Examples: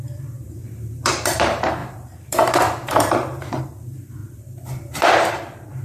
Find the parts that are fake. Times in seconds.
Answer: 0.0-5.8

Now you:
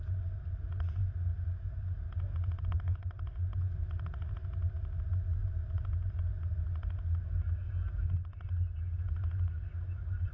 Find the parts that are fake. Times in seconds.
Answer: 5.4-6.4